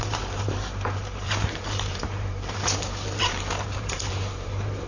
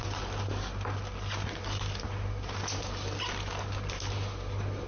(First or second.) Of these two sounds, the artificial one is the first